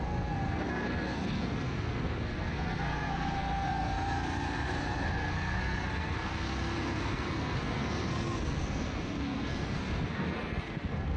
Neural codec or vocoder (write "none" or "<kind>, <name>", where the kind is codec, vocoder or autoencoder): codec, SNAC